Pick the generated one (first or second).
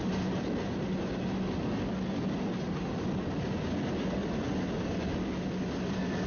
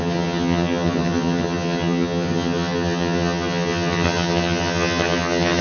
second